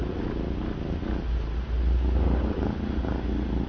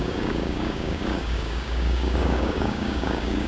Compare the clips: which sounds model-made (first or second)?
second